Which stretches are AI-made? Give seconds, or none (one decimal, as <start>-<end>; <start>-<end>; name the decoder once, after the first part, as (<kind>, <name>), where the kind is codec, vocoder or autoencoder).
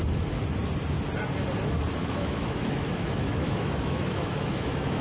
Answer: 2.0-5.0 (autoencoder, DAC-VAE)